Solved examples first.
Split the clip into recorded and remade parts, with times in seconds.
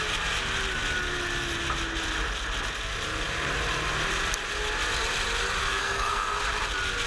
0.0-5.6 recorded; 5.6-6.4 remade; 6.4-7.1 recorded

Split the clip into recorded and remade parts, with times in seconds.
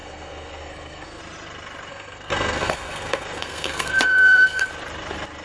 0.0-1.2 remade; 1.2-1.9 recorded; 1.9-4.7 remade; 4.7-5.4 recorded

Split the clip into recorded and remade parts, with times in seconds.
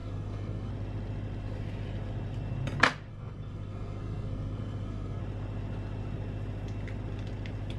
0.0-0.7 remade; 0.7-3.1 recorded; 3.1-5.2 remade; 5.2-7.8 recorded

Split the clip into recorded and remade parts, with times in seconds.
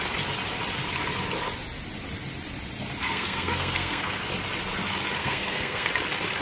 0.0-3.0 recorded; 3.0-4.2 remade; 4.2-5.2 recorded; 5.2-5.9 remade; 5.9-6.4 recorded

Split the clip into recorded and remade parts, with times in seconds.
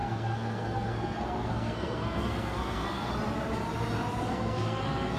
0.0-3.1 remade; 3.1-4.3 recorded; 4.3-5.2 remade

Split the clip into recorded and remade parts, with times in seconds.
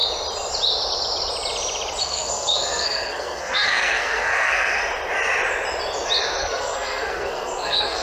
0.0-2.0 recorded; 2.0-4.8 remade; 4.8-6.4 recorded; 6.4-8.0 remade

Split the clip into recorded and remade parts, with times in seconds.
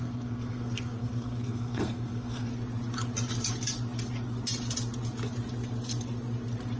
0.0-2.5 remade; 2.5-6.8 recorded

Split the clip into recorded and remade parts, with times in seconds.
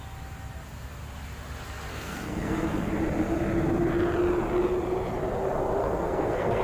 0.0-1.9 recorded; 1.9-2.9 remade; 2.9-5.8 recorded; 5.8-6.6 remade